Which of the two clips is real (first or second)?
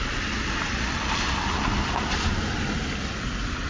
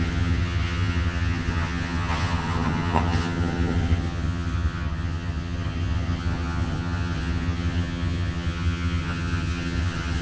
first